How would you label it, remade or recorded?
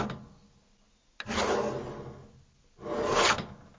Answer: recorded